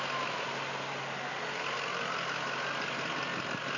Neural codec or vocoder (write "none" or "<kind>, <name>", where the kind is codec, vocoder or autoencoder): none